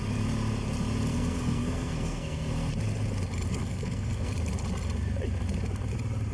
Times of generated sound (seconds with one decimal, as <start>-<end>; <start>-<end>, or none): 1.1-2.7; 3.5-4.3